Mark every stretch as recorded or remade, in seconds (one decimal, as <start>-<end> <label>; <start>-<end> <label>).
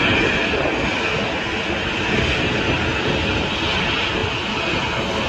0.0-5.3 recorded